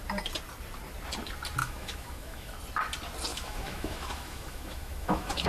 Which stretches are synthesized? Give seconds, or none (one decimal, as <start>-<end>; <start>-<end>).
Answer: 1.6-2.6; 3.3-5.5